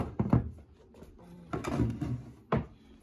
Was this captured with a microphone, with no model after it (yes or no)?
yes